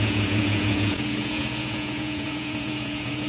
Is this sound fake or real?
fake